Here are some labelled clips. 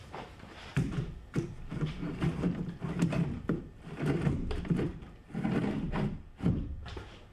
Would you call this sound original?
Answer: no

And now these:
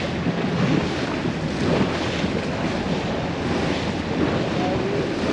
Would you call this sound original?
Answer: yes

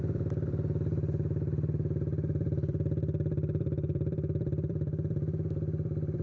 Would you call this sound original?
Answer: no